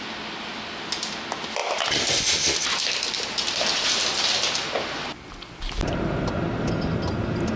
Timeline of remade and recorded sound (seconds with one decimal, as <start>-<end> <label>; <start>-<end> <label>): 0.0-7.6 recorded